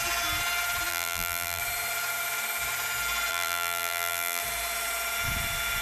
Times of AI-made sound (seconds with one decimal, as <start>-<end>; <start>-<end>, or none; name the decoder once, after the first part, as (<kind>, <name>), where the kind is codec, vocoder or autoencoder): 0.9-1.6 (vocoder, BigVGAN v2); 3.3-4.4